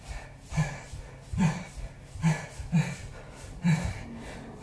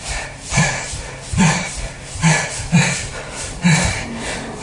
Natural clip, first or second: first